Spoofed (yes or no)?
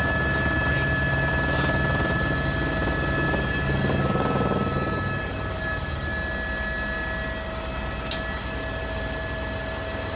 no